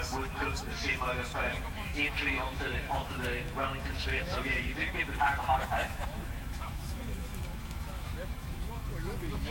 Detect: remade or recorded remade